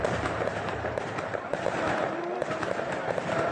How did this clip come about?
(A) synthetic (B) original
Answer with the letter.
A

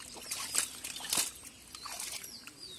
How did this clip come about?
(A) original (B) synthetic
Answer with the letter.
A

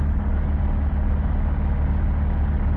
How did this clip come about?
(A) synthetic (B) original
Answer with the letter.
B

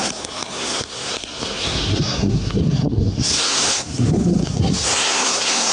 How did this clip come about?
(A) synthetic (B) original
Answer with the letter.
A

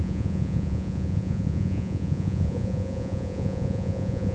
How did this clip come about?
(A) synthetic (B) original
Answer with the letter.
A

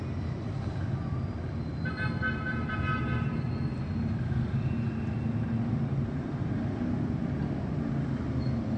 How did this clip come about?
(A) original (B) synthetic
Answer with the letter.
A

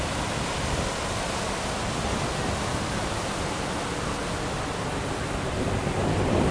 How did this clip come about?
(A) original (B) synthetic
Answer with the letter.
A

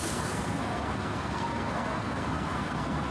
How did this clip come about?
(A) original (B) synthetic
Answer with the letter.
B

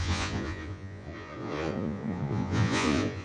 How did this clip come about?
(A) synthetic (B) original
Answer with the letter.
A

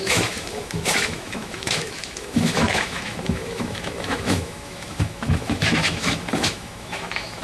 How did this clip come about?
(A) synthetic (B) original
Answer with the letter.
A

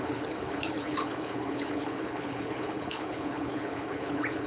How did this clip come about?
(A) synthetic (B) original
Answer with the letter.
A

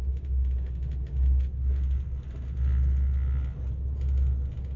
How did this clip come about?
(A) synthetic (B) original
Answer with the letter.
B